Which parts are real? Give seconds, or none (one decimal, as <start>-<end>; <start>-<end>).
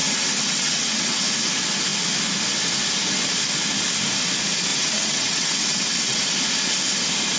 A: 1.2-4.7; 6.3-7.4